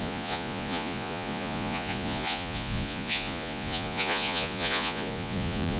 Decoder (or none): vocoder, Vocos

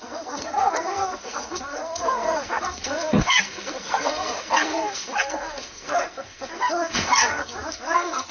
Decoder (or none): codec, SNAC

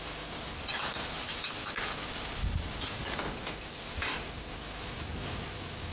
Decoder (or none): none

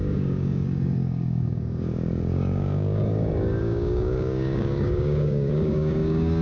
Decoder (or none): codec, DAC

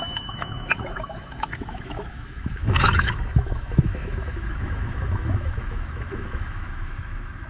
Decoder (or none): autoencoder, DAC-VAE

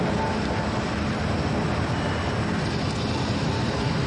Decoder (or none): none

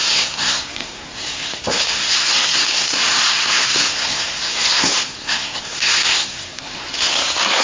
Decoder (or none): codec, SNAC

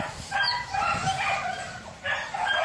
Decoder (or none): none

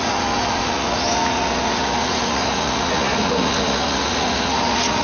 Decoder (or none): vocoder, Vocos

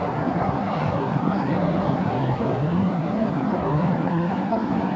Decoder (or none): codec, SNAC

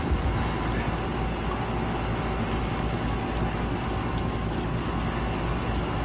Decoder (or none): none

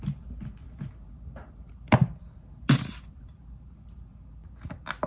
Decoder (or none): none